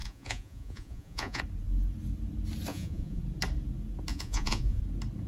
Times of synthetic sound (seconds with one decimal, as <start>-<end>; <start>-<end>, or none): 0.0-1.4; 2.7-3.2; 4.1-4.8